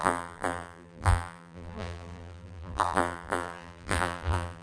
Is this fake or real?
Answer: fake